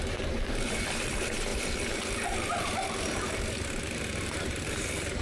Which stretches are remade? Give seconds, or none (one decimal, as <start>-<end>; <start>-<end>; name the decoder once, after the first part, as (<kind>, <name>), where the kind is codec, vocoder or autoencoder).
0.0-5.2 (vocoder, BigVGAN v2)